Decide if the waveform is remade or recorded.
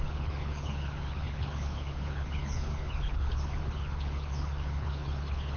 remade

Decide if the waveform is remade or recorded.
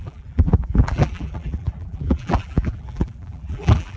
remade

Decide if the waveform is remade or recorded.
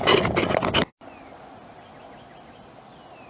recorded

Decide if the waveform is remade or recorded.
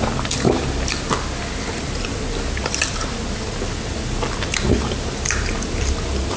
recorded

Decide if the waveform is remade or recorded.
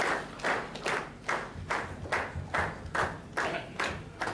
recorded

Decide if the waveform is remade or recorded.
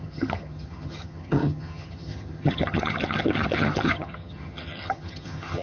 remade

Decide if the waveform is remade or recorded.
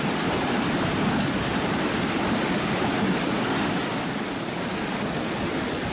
recorded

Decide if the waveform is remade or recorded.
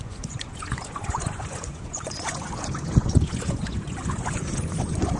remade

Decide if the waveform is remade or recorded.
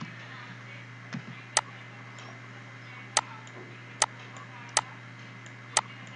recorded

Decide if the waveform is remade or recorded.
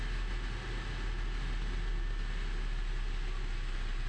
recorded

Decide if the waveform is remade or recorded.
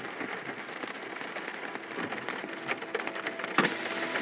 recorded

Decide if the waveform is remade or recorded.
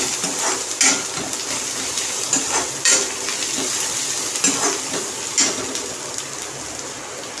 recorded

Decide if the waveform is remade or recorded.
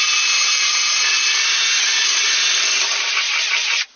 recorded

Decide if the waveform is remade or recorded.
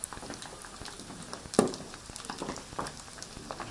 recorded